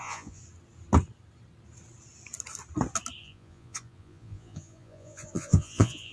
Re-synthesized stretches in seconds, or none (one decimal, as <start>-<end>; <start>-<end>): 0.0-0.4; 3.2-6.1